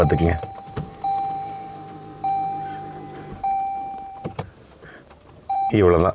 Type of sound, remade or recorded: remade